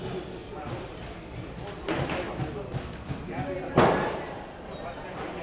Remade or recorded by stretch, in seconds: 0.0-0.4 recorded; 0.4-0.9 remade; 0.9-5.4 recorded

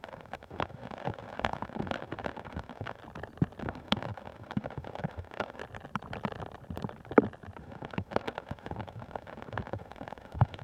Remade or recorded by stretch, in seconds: 0.0-3.0 remade; 3.0-3.6 recorded; 3.6-5.6 remade; 5.6-7.6 recorded; 7.6-10.6 remade

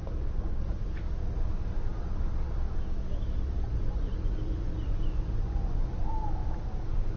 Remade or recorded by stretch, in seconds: 0.0-3.7 recorded; 3.7-6.0 remade; 6.0-7.2 recorded

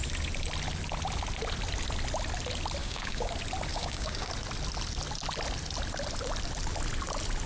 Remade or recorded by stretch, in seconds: 0.0-2.8 recorded; 2.8-3.3 remade; 3.3-3.7 recorded; 3.7-4.3 remade; 4.3-7.5 recorded

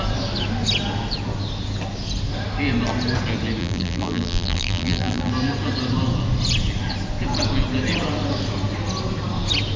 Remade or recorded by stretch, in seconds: 0.0-3.6 recorded; 3.6-5.3 remade; 5.3-9.8 recorded

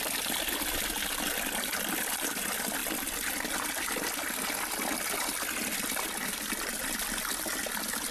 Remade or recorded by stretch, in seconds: 0.0-8.1 recorded